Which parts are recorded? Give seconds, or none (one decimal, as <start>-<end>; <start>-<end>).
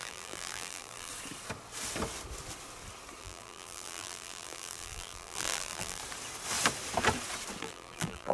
1.1-3.2; 6.0-7.6